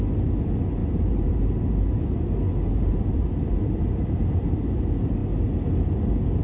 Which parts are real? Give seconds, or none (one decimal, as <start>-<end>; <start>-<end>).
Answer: 0.0-0.8; 1.9-2.7; 4.5-6.4